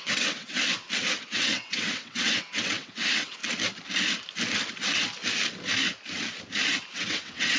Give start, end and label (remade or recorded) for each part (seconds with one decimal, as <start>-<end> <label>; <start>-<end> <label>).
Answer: 0.0-0.5 remade; 0.5-1.2 recorded; 1.2-3.4 remade; 3.4-6.9 recorded; 6.9-7.6 remade